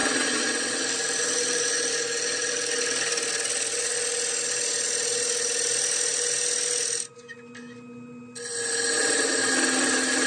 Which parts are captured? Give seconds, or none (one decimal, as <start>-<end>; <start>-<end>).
0.8-10.3